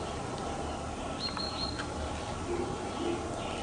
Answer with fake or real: real